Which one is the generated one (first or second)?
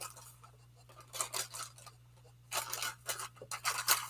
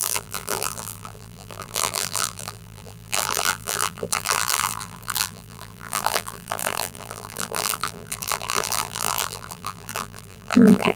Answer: second